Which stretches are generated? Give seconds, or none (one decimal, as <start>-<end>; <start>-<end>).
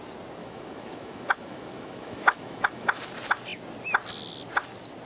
0.4-3.0